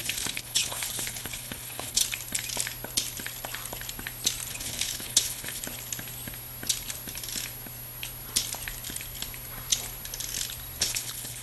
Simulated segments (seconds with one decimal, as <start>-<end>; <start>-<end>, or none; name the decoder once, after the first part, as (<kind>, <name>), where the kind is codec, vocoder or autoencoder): 0.0-2.0 (codec, HILCodec); 4.5-5.6; 10.8-11.4